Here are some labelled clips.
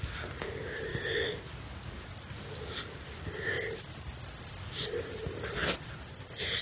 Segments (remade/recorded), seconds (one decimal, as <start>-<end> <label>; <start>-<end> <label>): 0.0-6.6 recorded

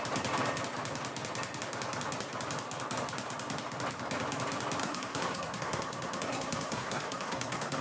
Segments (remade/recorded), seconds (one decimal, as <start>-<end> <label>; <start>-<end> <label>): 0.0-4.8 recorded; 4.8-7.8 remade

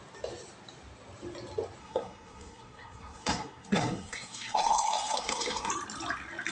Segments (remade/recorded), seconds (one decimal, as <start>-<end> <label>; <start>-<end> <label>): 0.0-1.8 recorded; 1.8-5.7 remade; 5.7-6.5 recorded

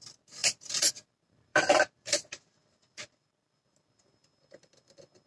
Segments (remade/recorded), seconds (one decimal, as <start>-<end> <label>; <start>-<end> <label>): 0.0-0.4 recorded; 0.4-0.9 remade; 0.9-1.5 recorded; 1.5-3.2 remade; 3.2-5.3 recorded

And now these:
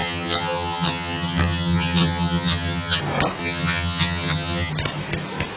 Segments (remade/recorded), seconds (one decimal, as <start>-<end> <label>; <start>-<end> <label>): 0.0-3.0 remade; 3.0-3.4 recorded; 3.4-4.7 remade; 4.7-5.6 recorded

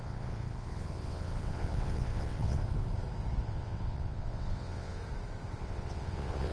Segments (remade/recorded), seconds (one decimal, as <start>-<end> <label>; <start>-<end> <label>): 0.0-2.6 remade; 2.6-3.4 recorded; 3.4-5.0 remade; 5.0-5.6 recorded; 5.6-6.5 remade